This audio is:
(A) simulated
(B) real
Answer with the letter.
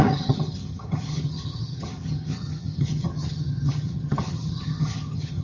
A